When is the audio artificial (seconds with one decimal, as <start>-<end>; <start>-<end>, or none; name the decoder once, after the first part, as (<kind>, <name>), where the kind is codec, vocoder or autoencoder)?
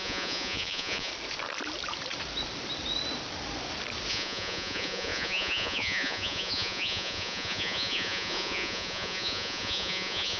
0.0-1.1 (vocoder, Vocos); 4.1-10.4